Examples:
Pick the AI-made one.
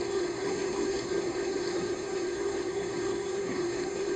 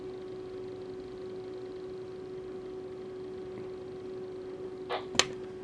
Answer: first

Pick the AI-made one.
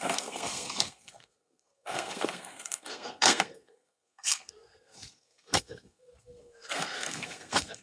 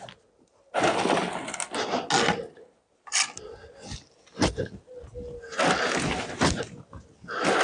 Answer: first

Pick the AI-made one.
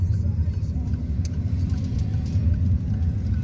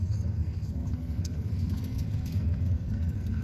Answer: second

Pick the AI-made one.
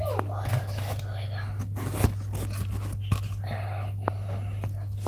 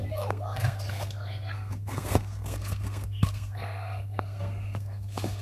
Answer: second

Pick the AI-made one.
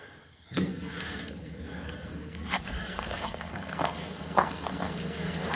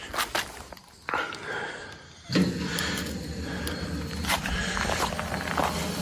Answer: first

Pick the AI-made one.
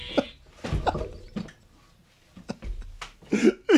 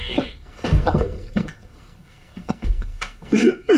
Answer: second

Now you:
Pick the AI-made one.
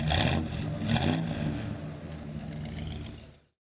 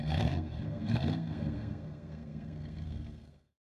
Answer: second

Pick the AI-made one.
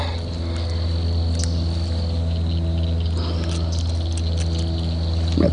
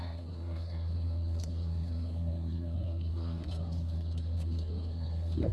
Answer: second